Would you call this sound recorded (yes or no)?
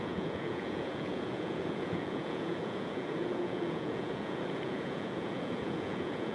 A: no